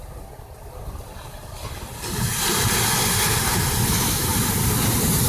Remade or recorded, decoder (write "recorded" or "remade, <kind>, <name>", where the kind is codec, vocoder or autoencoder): recorded